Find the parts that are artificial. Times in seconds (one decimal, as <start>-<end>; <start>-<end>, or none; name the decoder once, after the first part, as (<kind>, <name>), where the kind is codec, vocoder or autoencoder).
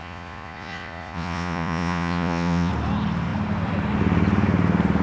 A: 0.0-2.7 (vocoder, Vocos)